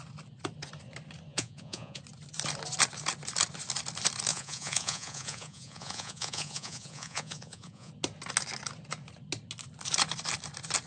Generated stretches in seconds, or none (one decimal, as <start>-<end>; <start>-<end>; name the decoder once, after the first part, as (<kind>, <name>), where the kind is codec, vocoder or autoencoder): 1.3-2.0 (vocoder, Vocos); 4.3-7.9